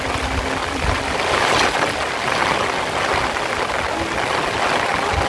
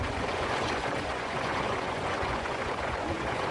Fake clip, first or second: second